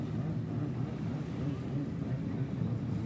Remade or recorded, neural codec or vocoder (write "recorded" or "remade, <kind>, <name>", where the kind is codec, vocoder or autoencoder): recorded